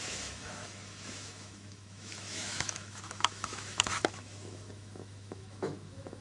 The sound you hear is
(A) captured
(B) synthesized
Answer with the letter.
B